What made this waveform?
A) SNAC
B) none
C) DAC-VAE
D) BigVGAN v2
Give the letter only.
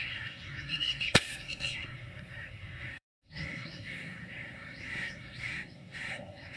A